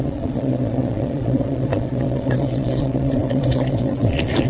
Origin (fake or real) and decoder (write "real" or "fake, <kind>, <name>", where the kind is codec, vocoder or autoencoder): fake, vocoder, Vocos